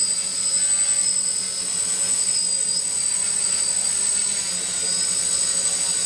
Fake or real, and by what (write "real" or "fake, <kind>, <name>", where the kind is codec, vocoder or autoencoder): real